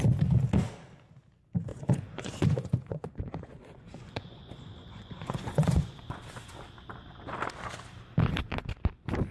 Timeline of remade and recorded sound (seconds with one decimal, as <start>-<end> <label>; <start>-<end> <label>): 0.0-1.7 recorded; 1.7-6.2 remade; 6.2-9.3 recorded